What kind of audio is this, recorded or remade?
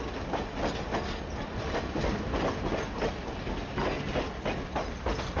recorded